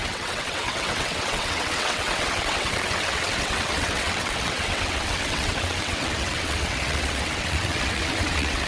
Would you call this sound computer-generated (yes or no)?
yes